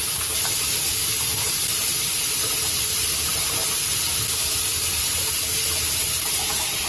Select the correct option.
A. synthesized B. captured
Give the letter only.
B